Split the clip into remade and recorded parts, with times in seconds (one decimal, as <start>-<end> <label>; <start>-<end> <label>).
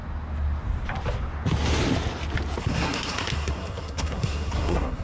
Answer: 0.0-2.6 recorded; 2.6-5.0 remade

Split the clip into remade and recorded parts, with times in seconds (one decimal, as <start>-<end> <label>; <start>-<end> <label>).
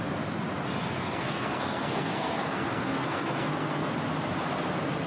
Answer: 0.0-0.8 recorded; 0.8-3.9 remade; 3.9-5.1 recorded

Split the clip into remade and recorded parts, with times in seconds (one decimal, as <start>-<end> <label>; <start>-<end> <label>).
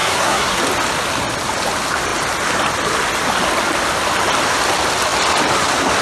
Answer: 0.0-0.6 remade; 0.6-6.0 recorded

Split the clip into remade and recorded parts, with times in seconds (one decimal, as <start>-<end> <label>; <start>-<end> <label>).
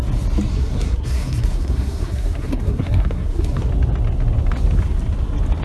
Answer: 0.0-0.5 recorded; 0.5-3.7 remade; 3.7-5.6 recorded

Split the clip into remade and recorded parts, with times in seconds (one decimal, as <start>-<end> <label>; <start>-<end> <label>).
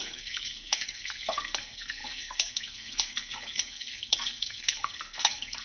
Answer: 0.0-5.6 remade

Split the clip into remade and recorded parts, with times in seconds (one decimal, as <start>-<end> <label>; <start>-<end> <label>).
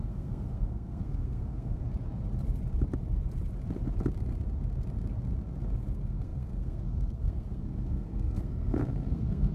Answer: 0.0-1.8 remade; 1.8-5.8 recorded; 5.8-9.5 remade